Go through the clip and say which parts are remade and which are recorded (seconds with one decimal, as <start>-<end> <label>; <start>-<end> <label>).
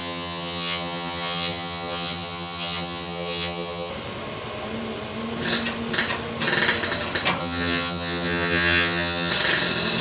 0.0-3.9 remade; 3.9-7.4 recorded; 7.4-9.3 remade; 9.3-10.0 recorded